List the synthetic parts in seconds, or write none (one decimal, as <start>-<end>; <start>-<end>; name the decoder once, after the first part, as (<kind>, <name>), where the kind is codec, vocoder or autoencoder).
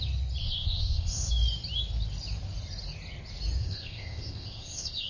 0.4-1.3 (codec, ZipCodec); 3.6-5.1